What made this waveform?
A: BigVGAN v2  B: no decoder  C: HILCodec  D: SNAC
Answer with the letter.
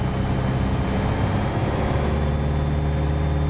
B